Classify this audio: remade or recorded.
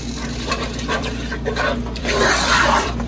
remade